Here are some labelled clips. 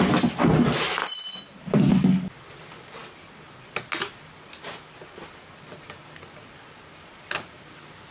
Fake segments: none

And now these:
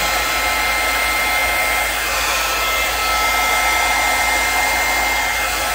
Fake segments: none

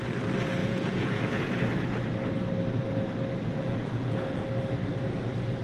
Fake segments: 0.6-1.4 (vocoder, Vocos); 3.5-4.4

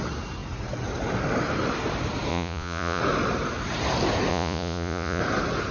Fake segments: 2.3-3.0 (vocoder, Vocos); 4.3-5.2